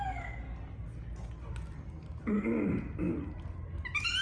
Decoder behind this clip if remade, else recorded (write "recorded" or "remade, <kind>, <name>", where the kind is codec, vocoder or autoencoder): recorded